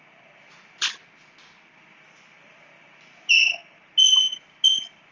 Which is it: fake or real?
real